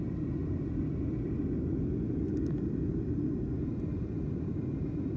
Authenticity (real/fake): real